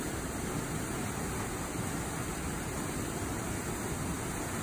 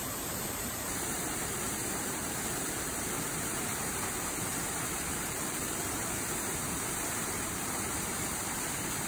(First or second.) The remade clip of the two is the second